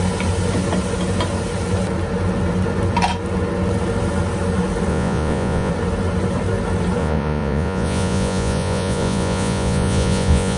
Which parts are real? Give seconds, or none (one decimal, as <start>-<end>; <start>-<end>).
0.0-4.9; 5.7-7.0